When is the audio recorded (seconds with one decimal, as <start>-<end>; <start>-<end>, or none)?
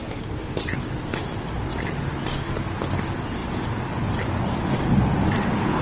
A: 0.0-5.8